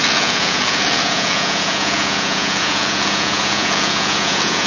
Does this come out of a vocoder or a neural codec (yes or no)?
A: yes